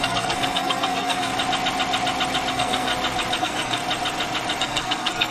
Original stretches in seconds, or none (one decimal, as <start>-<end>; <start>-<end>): 1.3-2.5; 2.9-3.4; 3.8-4.6